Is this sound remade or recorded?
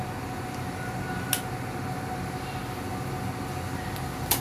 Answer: recorded